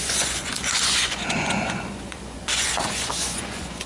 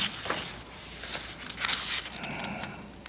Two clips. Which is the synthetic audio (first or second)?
first